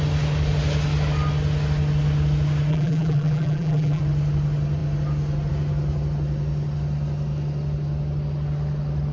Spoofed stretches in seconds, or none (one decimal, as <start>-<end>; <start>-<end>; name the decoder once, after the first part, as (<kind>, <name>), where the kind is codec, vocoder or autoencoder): 2.7-4.0 (vocoder, BigVGAN v2)